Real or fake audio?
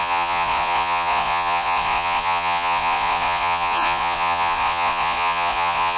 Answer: fake